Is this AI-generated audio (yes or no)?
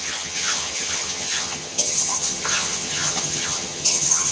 yes